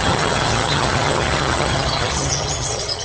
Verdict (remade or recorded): remade